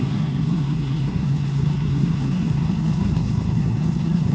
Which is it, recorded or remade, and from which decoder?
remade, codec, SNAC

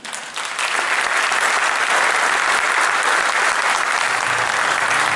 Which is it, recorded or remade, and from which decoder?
recorded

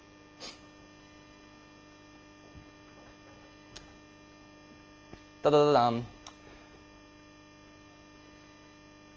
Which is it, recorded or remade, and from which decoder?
recorded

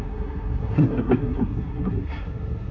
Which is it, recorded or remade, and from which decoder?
remade, codec, SNAC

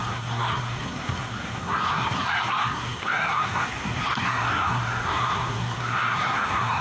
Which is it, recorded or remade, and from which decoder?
remade, codec, SNAC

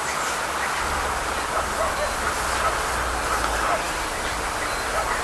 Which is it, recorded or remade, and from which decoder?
recorded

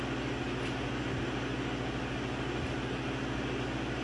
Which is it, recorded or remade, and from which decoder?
recorded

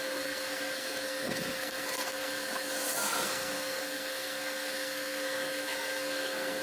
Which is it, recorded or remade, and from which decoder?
remade, codec, SNAC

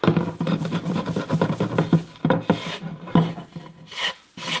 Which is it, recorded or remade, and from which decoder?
recorded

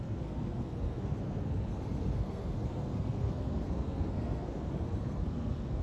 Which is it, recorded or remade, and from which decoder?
remade, codec, SNAC